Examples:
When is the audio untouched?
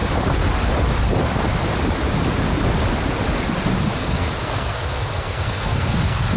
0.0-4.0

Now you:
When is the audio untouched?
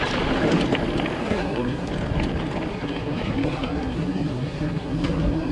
0.0-1.2; 1.9-2.7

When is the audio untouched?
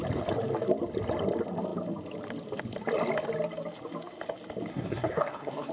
0.0-4.7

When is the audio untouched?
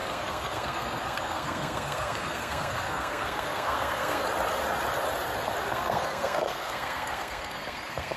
4.2-5.7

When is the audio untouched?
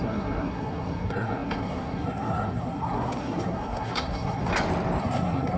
4.5-5.0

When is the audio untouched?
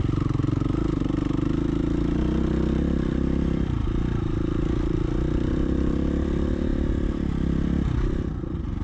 0.0-8.8